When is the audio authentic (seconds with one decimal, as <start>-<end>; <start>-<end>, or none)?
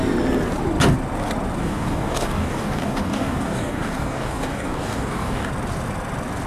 0.0-1.6; 5.5-6.5